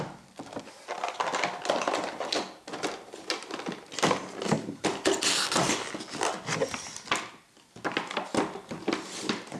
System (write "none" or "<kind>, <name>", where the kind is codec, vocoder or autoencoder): none